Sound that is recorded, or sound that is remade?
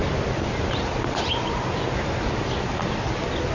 recorded